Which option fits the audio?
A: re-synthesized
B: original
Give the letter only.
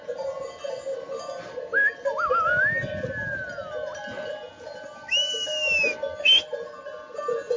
B